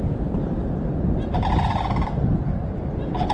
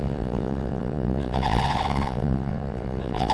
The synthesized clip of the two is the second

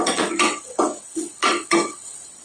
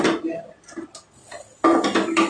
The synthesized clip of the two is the first